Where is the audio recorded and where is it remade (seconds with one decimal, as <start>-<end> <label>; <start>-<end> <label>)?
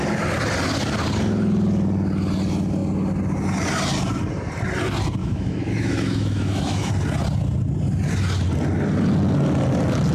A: 0.0-5.2 recorded; 5.2-6.9 remade; 6.9-10.1 recorded